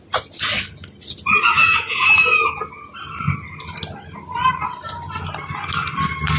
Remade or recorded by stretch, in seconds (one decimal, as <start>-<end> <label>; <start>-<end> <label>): 0.0-1.6 recorded; 1.6-2.6 remade; 2.6-6.4 recorded